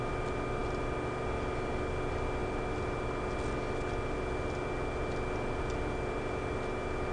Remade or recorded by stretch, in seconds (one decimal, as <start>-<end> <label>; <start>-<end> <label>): 0.0-7.1 recorded